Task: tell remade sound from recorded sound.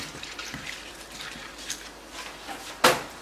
recorded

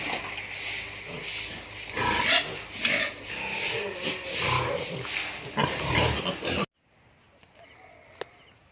recorded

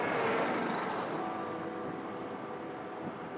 recorded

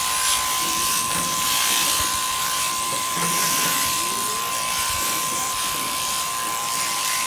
remade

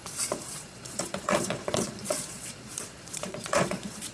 remade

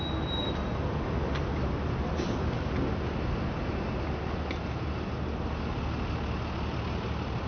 recorded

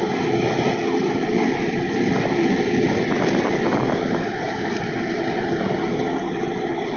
recorded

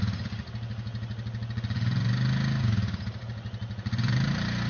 recorded